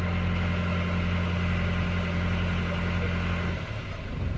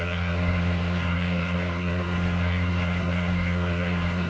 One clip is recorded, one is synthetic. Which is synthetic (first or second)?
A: second